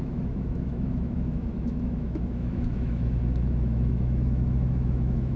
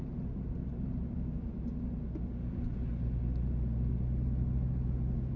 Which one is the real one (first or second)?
second